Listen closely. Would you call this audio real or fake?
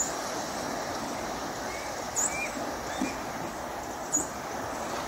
real